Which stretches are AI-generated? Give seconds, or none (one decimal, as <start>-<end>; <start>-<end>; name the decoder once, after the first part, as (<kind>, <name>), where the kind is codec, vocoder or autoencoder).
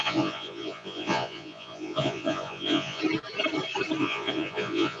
0.0-3.0 (vocoder, Vocos); 4.0-5.0